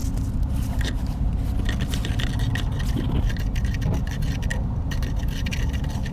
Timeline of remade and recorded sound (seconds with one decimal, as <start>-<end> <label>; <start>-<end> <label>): 0.0-6.1 recorded